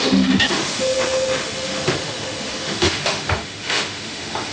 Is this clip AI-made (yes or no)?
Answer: yes